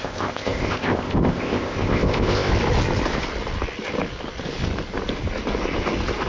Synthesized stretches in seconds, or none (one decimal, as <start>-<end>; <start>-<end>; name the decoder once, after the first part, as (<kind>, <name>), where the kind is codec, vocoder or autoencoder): 0.0-2.5 (codec, ZipCodec)